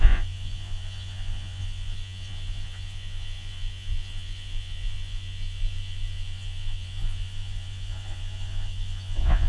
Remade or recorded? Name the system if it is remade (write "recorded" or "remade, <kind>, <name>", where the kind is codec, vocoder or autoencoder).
remade, vocoder, Vocos